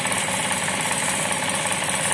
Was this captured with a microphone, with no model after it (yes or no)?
yes